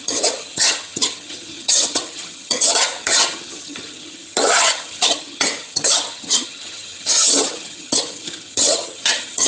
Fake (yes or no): yes